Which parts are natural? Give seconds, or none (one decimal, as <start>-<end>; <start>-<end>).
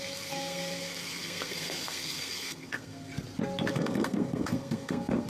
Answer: 3.1-3.7